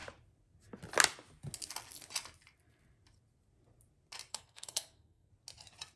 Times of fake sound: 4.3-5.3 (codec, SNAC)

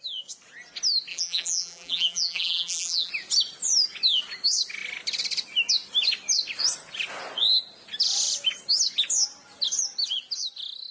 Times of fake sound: 1.1-3.1 (vocoder, BigVGAN v2)

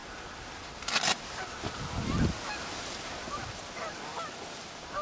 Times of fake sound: none

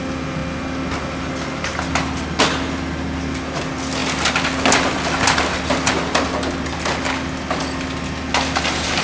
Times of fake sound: none

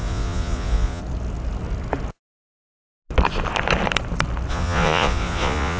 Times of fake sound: 0.0-1.0 (vocoder, Vocos); 4.5-5.8